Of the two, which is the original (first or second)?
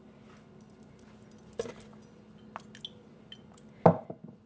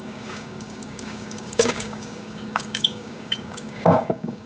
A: first